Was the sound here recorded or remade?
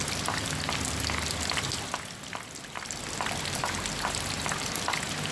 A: recorded